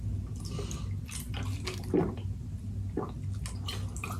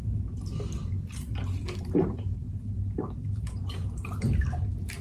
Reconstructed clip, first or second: second